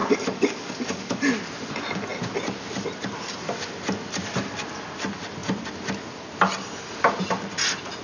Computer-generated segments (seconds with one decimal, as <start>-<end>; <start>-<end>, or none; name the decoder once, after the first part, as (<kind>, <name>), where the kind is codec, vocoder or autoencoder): 0.0-1.2 (codec, DAC)